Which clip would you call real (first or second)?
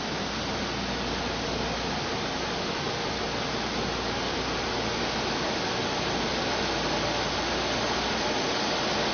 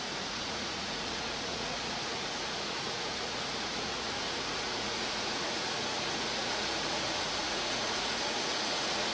first